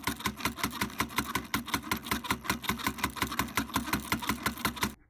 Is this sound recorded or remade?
recorded